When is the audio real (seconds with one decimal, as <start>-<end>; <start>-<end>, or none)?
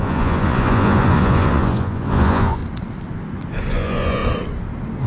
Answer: 2.6-3.7; 4.2-5.1